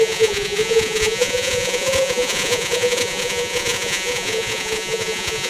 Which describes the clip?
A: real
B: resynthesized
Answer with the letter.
B